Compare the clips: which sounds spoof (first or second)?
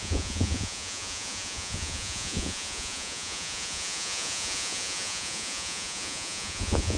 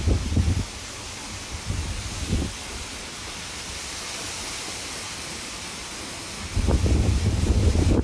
first